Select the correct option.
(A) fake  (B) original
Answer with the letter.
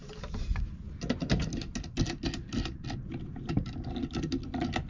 B